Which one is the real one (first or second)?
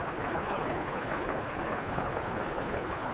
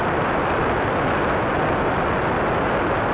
second